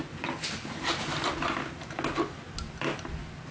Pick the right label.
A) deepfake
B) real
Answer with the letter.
B